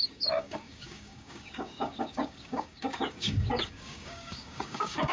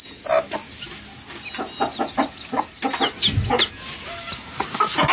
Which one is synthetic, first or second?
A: first